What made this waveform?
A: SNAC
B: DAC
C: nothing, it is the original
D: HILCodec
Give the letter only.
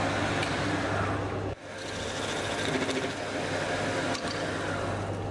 C